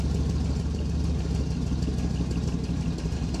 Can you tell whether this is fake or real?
real